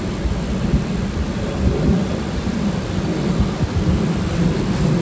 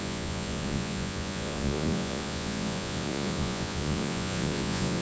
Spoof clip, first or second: second